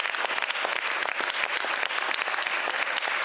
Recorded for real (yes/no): yes